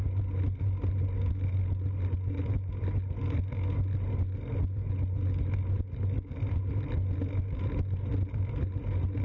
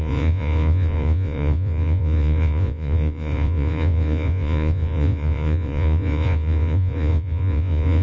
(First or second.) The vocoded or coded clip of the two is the second